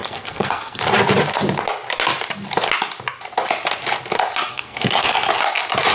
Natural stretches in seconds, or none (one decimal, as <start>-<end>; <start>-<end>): 0.8-4.5; 5.3-5.9